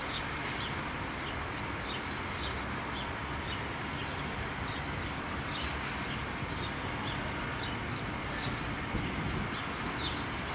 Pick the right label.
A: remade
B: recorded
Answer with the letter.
B